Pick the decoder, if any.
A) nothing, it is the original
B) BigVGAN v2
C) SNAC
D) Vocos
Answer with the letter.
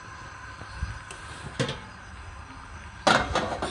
A